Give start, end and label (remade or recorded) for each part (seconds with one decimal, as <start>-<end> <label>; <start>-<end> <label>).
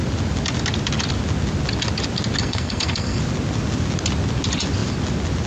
0.0-2.4 recorded; 2.4-3.2 remade; 3.2-5.5 recorded